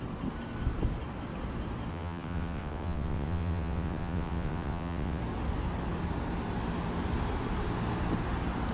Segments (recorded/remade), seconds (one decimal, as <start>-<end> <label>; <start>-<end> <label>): 0.0-1.9 recorded; 1.9-5.2 remade; 5.2-8.7 recorded